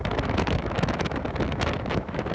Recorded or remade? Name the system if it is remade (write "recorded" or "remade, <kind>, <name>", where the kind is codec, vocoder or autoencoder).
remade, autoencoder, DAC-VAE